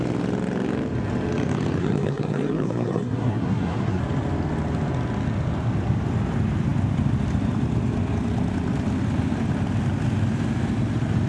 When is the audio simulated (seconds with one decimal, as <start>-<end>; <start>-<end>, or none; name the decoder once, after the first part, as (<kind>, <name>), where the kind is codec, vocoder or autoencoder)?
1.8-4.0 (codec, SNAC)